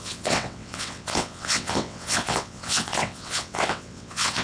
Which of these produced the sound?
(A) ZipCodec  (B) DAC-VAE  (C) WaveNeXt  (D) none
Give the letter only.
C